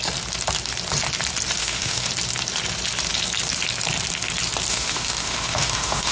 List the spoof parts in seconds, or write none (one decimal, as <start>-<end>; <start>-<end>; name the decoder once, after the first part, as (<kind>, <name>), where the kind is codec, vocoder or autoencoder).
1.6-2.1 (autoencoder, DAC-VAE); 4.7-6.1